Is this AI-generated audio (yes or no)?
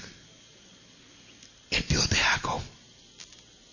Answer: no